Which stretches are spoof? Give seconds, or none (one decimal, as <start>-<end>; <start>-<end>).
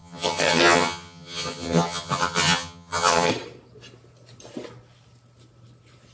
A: 0.0-3.3